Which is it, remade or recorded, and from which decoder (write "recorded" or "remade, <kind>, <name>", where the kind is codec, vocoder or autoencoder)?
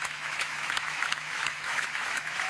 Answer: remade, autoencoder, DAC-VAE